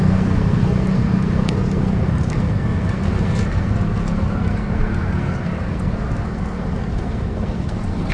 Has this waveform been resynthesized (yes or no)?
yes